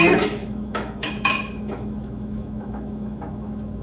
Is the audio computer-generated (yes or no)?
yes